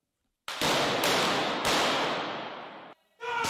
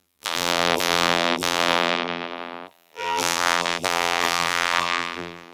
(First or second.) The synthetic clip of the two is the second